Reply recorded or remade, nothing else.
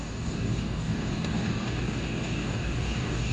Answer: remade